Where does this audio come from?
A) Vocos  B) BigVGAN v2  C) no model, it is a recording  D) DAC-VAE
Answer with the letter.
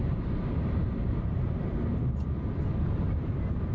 B